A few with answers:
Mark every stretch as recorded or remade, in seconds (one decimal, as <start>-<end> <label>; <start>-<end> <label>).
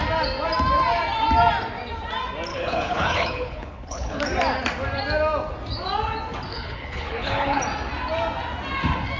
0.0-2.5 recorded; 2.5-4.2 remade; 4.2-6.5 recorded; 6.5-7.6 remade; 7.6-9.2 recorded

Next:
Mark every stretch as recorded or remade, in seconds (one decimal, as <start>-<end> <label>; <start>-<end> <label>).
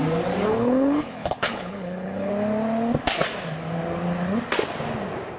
0.0-0.5 recorded; 0.5-2.3 remade; 2.3-5.4 recorded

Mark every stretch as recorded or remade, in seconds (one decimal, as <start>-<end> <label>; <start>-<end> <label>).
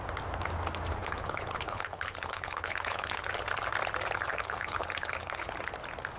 0.0-1.0 recorded; 1.0-3.3 remade; 3.3-4.3 recorded; 4.3-5.5 remade; 5.5-6.2 recorded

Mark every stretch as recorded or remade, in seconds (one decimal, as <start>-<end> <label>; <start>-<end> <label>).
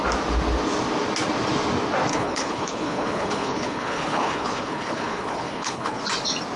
0.0-2.1 recorded; 2.1-6.0 remade; 6.0-6.6 recorded